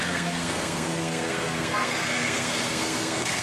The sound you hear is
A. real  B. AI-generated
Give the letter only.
B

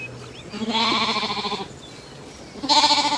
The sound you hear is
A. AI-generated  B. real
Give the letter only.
B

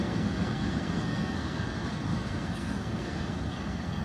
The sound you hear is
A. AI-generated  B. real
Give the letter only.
A